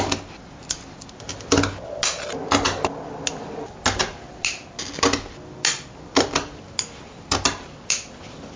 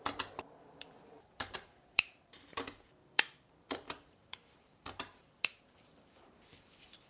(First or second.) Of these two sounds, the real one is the first